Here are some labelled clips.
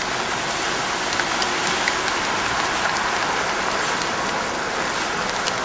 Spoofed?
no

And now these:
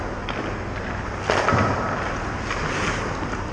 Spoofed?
no